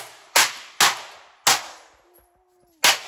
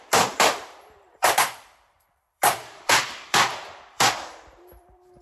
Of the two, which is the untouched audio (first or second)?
first